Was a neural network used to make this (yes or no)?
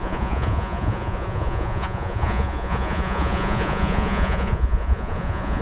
yes